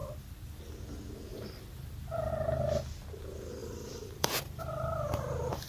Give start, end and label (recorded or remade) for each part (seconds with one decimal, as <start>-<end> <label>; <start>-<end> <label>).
0.0-0.6 remade; 0.6-1.3 recorded; 1.3-2.3 remade; 2.3-3.6 recorded; 3.6-4.6 remade; 4.6-5.7 recorded

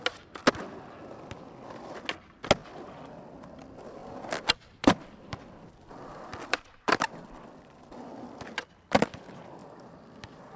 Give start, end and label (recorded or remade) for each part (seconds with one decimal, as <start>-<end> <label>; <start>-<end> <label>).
0.0-4.0 recorded; 4.0-9.2 remade; 9.2-10.6 recorded

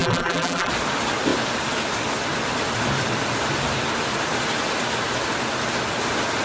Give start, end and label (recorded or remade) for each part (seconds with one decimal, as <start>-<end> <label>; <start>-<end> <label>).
0.0-0.7 remade; 0.7-6.4 recorded

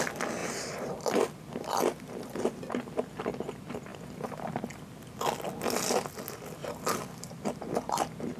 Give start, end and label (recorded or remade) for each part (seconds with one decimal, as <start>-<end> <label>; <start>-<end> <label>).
0.0-0.4 recorded; 0.4-2.7 remade; 2.7-3.9 recorded; 3.9-4.5 remade; 4.5-6.6 recorded; 6.6-7.6 remade; 7.6-8.4 recorded

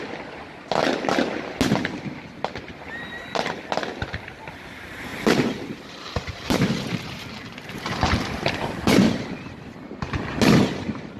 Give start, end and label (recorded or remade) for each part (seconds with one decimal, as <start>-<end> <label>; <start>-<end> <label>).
0.0-5.1 recorded; 5.1-8.1 remade; 8.1-11.2 recorded

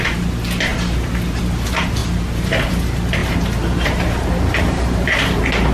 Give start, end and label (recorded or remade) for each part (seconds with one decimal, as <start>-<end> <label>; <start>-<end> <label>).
0.0-2.0 recorded; 2.0-2.7 remade; 2.7-3.2 recorded; 3.2-5.7 remade

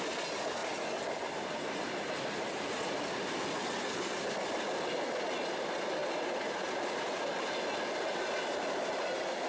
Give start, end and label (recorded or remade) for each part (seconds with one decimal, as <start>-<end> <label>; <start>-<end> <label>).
0.0-9.5 recorded